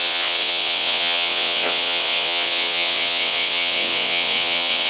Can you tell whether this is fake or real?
fake